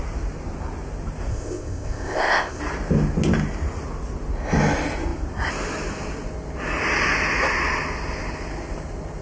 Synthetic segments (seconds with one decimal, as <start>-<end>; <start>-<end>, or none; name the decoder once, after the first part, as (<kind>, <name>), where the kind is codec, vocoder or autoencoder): 1.3-2.6 (codec, ZipCodec)